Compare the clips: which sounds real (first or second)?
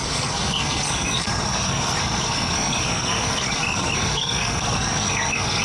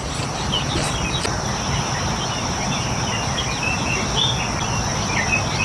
second